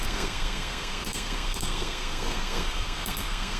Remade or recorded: remade